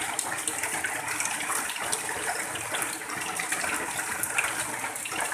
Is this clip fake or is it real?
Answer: real